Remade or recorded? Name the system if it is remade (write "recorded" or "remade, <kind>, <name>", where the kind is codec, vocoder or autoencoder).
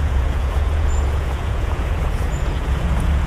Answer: remade, vocoder, Vocos